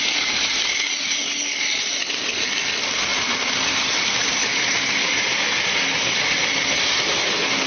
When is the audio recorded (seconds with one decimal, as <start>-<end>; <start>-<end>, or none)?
0.0-7.7